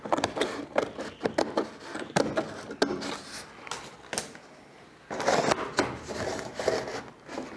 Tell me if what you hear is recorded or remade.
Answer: recorded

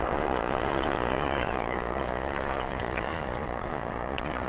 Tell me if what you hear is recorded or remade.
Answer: remade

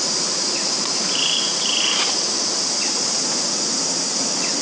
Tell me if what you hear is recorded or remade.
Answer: remade